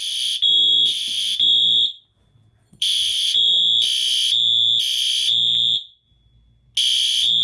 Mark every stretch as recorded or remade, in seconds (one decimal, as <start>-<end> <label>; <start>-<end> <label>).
0.0-7.4 recorded